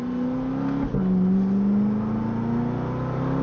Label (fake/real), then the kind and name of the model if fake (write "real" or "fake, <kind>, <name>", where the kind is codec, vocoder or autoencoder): real